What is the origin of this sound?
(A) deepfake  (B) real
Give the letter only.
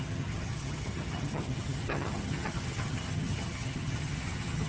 A